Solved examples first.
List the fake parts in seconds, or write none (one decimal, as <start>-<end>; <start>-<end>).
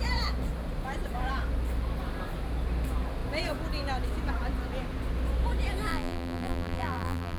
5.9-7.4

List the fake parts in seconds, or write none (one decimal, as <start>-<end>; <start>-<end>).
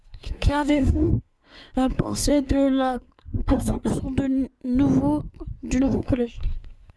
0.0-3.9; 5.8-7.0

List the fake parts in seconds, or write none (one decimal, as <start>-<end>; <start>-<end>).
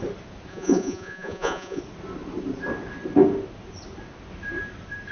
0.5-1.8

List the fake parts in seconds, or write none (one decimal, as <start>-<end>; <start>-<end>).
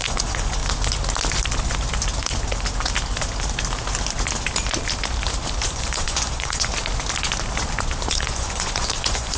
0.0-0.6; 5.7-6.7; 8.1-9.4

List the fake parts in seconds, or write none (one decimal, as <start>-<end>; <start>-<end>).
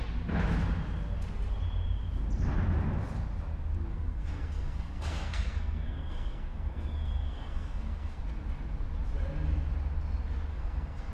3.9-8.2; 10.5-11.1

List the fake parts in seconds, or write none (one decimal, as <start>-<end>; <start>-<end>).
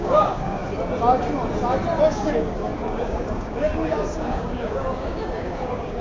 0.0-0.6; 2.0-6.0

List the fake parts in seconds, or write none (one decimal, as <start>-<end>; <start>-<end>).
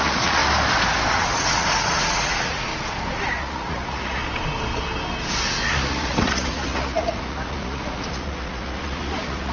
0.0-0.4; 1.1-2.7; 3.3-4.2; 5.7-9.5